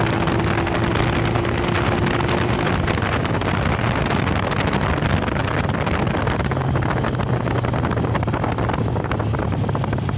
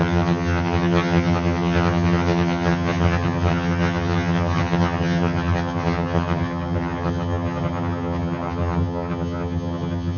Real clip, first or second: first